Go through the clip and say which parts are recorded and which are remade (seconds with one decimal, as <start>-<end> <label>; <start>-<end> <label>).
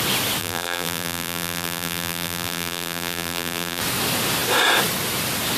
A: 0.0-0.4 recorded; 0.4-3.8 remade; 3.8-5.6 recorded